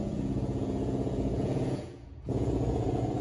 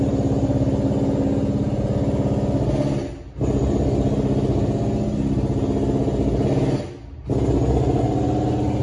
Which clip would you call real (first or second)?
second